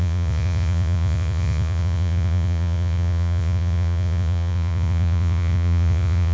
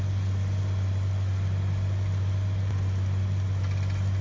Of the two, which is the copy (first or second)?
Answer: first